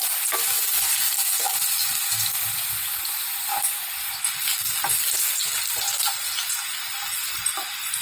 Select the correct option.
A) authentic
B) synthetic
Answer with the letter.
A